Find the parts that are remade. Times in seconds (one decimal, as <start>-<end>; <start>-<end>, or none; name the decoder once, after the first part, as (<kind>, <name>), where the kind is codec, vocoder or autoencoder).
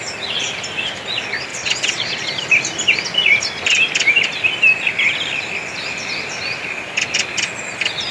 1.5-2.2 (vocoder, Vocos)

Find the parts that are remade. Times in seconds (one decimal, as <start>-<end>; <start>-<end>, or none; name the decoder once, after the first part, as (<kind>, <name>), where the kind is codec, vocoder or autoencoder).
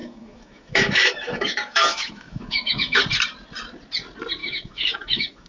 0.0-3.0 (autoencoder, DAC-VAE); 4.4-5.5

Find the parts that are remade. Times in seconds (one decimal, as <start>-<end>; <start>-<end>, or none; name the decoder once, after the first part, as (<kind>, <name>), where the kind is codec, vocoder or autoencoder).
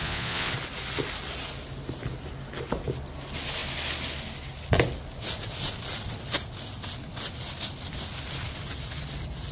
0.0-0.5 (vocoder, Vocos)